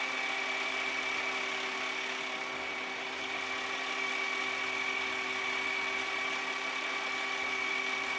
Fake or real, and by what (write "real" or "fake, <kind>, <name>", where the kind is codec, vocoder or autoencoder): real